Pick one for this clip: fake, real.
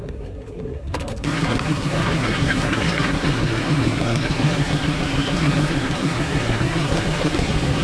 fake